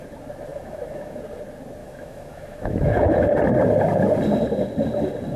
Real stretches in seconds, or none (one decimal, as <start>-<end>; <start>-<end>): 0.0-0.5; 1.2-1.8; 3.3-5.4

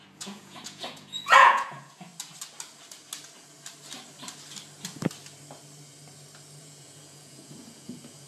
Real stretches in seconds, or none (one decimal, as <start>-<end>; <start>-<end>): 2.1-6.6